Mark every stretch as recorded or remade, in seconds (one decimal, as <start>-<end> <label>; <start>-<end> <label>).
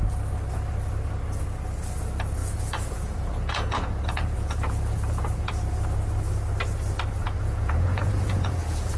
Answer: 0.0-2.4 recorded; 2.4-5.5 remade; 5.5-7.2 recorded; 7.2-9.0 remade